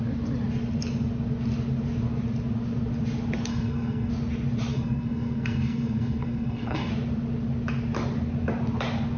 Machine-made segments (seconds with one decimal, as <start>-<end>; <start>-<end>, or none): 3.5-4.1; 4.7-6.9